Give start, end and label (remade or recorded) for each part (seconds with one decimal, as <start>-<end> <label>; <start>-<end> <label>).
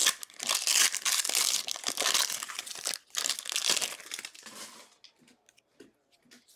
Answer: 0.0-6.6 recorded